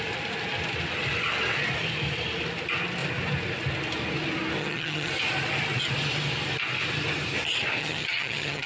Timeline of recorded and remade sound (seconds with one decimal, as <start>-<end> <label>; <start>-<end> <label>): 0.0-4.6 recorded; 4.6-5.1 remade; 5.1-7.8 recorded; 7.8-8.7 remade